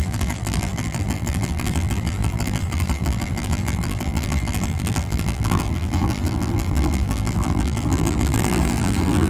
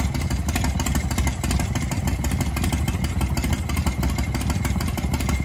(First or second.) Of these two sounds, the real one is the second